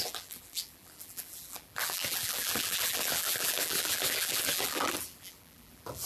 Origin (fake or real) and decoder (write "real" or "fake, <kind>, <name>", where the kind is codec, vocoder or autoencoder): fake, vocoder, BigVGAN v2